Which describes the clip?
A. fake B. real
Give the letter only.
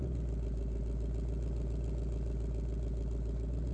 B